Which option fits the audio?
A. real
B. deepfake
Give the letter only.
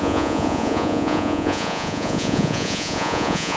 B